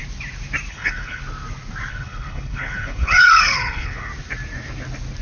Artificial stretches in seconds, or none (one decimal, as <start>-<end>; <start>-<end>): 0.7-1.2; 1.9-4.1